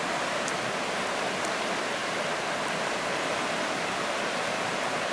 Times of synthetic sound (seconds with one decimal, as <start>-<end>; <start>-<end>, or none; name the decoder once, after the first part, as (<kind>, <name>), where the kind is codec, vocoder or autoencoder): none